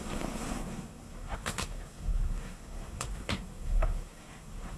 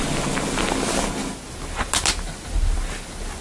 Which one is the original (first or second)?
second